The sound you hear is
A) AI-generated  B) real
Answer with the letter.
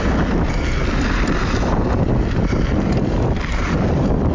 B